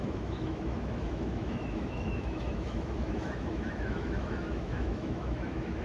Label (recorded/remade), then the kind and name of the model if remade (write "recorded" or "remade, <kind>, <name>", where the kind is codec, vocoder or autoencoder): remade, autoencoder, DAC-VAE